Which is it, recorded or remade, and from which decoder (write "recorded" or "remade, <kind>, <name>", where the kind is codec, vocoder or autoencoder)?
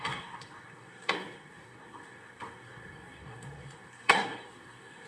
remade, codec, SNAC